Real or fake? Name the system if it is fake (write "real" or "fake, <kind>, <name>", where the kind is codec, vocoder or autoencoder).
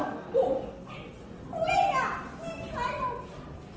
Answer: real